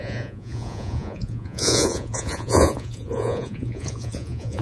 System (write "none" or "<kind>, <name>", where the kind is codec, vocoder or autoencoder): vocoder, Vocos